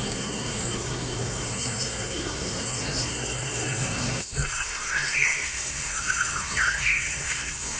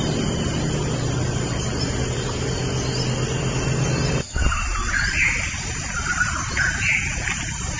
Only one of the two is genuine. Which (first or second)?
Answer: second